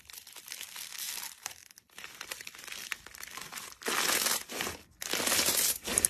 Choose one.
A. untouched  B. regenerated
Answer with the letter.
A